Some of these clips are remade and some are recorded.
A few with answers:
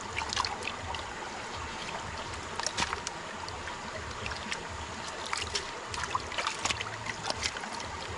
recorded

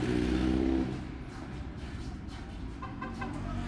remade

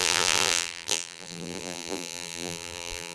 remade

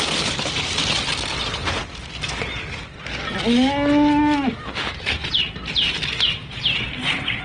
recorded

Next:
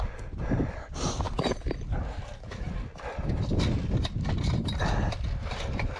recorded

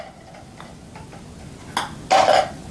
recorded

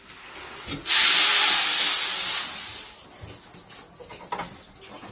recorded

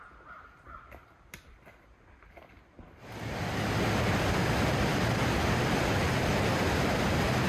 recorded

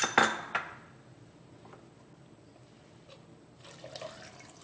recorded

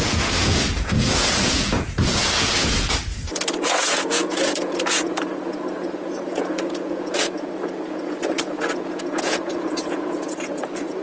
remade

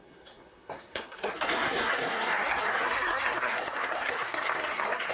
remade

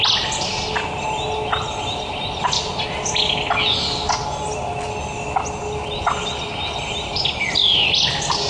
recorded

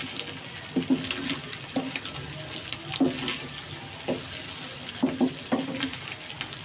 recorded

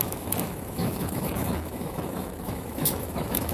remade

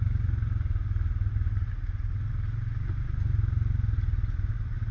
recorded